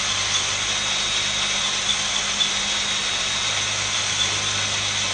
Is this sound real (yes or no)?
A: yes